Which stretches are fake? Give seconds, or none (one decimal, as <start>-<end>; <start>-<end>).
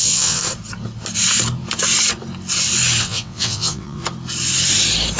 0.0-0.4; 3.0-4.0